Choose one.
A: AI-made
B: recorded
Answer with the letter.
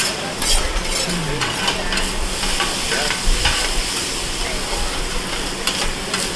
B